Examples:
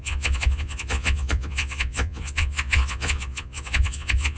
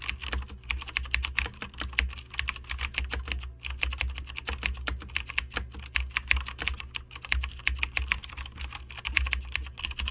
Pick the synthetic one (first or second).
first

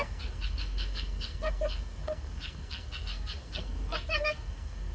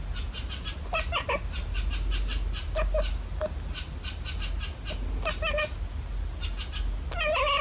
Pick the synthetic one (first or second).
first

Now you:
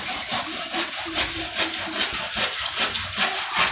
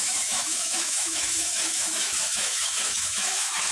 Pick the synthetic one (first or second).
second